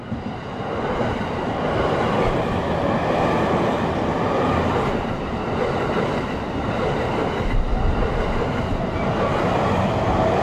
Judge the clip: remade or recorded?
recorded